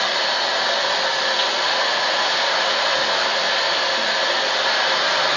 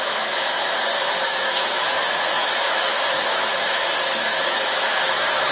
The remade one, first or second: second